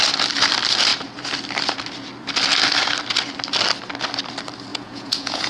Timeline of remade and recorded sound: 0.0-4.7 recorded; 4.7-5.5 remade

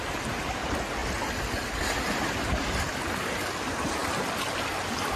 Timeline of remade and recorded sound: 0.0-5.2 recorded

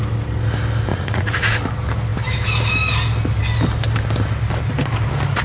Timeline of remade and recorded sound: 0.0-0.9 recorded; 0.9-1.7 remade; 1.7-5.4 recorded

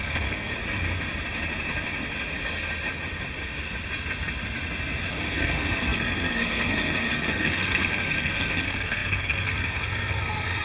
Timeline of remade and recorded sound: 0.0-0.5 remade; 0.5-5.1 recorded; 5.1-10.6 remade

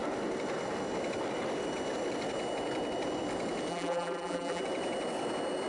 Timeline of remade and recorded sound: 0.0-3.7 recorded; 3.7-4.6 remade; 4.6-5.7 recorded

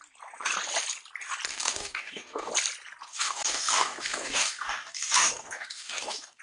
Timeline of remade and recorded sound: 0.0-1.5 recorded; 1.5-2.5 remade; 2.5-3.1 recorded; 3.1-6.4 remade

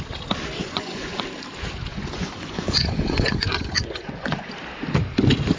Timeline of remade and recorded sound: 0.0-0.6 recorded; 0.6-1.2 remade; 1.2-1.9 recorded; 1.9-4.5 remade; 4.5-5.6 recorded